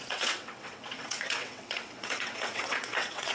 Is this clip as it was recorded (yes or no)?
no